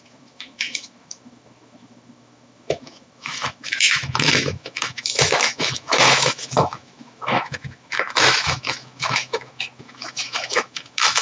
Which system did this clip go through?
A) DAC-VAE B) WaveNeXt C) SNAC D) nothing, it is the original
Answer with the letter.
A